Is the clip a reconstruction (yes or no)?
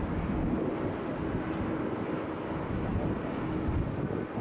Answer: no